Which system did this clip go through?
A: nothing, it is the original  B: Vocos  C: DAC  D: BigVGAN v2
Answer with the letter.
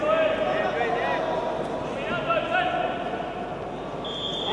A